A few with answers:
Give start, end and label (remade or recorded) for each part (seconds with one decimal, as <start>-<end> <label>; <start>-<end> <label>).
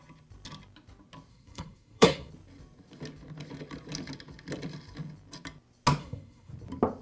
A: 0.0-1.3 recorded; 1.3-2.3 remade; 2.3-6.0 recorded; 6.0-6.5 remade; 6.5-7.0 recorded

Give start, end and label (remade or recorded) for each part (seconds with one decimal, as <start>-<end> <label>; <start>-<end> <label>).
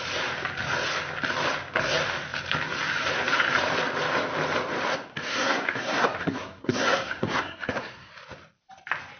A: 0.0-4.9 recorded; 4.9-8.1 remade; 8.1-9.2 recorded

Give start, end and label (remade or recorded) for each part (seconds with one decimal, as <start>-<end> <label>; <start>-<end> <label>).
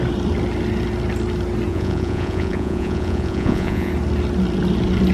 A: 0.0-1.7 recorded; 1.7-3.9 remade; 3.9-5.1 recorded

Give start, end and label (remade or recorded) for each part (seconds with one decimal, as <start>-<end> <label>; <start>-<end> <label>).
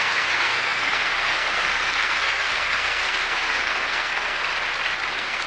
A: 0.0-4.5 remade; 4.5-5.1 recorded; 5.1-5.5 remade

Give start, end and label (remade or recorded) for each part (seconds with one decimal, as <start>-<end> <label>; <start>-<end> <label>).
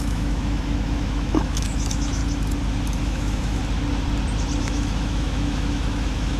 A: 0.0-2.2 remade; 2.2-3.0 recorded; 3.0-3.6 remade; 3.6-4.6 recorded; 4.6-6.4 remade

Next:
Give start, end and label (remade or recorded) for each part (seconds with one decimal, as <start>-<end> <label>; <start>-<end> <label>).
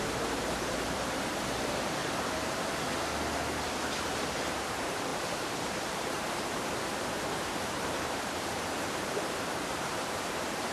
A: 0.0-2.0 remade; 2.0-4.5 recorded; 4.5-10.7 remade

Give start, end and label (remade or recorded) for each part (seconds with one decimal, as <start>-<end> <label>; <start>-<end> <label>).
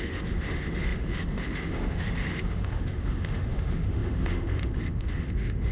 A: 0.0-5.7 remade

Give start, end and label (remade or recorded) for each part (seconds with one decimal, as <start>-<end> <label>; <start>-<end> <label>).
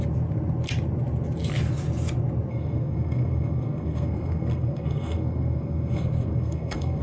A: 0.0-2.5 recorded; 2.5-7.0 remade